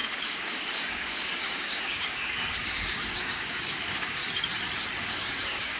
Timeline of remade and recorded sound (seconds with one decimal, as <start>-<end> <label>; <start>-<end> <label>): 0.0-4.2 remade; 4.2-5.0 recorded; 5.0-5.8 remade